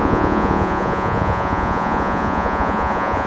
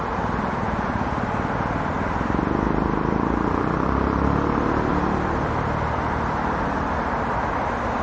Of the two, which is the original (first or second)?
second